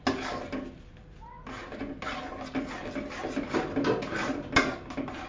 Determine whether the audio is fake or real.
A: real